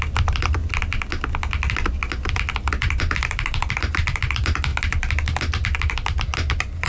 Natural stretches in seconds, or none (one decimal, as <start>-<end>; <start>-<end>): 0.6-2.3; 4.7-6.5